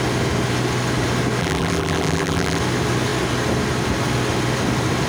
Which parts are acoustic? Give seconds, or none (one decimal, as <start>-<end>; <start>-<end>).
0.0-1.4; 2.6-5.1